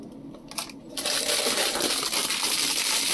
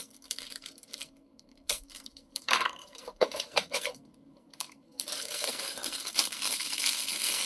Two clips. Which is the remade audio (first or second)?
second